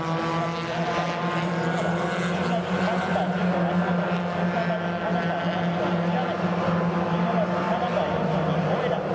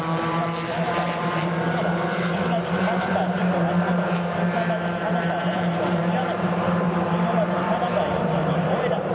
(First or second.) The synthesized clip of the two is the second